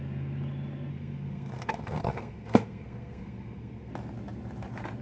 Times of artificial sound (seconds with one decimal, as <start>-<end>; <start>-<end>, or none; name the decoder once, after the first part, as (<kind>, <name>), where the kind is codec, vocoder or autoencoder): 0.9-3.9 (codec, SNAC)